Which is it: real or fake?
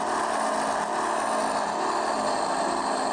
real